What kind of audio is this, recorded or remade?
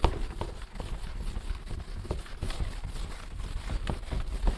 recorded